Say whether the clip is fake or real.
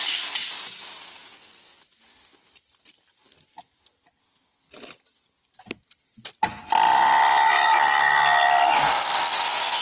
real